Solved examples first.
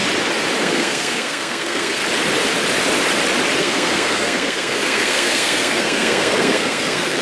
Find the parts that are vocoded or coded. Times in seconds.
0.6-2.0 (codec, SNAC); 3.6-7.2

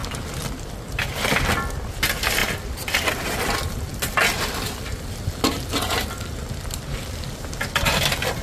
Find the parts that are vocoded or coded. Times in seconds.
none

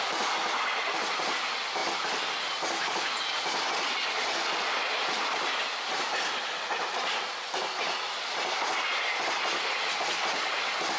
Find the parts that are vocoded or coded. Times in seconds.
none

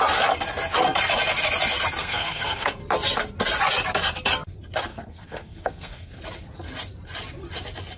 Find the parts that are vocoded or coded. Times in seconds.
2.0-2.8 (codec, SNAC); 4.9-6.2

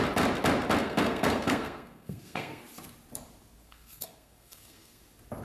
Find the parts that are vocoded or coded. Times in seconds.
0.8-2.6 (codec, SNAC); 3.6-5.0

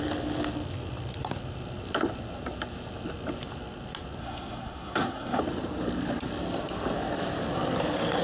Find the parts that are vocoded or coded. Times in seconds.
4.2-5.4 (codec, SNAC)